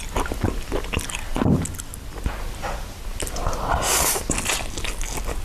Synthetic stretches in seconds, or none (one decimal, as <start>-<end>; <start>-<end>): none